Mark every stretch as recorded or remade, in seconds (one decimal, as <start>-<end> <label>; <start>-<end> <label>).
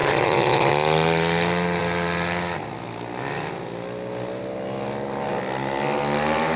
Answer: 0.0-0.7 remade; 0.7-6.6 recorded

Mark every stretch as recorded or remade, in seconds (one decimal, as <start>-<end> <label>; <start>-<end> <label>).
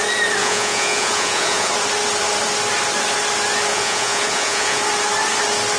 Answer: 0.0-0.4 recorded; 0.4-1.7 remade; 1.7-3.7 recorded; 3.7-4.8 remade; 4.8-5.8 recorded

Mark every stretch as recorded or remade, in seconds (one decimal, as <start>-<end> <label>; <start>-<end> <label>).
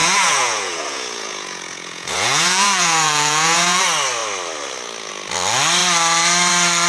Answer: 0.0-3.8 remade; 3.8-6.9 recorded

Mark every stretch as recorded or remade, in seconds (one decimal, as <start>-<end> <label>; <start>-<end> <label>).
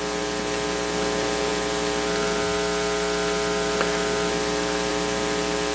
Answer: 0.0-5.7 recorded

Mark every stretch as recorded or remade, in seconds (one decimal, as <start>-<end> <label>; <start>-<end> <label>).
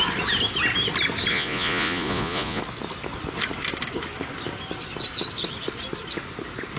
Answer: 0.0-1.3 recorded; 1.3-2.6 remade; 2.6-6.8 recorded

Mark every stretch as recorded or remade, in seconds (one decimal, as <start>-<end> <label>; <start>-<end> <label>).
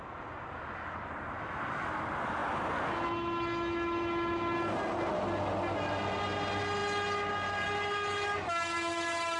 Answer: 0.0-9.4 recorded